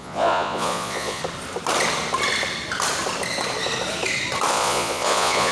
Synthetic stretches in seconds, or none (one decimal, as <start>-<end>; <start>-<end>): 0.0-1.2; 4.5-5.5